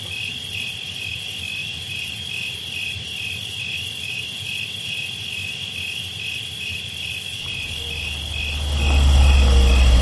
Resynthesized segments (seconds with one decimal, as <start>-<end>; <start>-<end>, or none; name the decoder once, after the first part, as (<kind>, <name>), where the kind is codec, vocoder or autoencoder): 1.6-2.3 (vocoder, BigVGAN v2)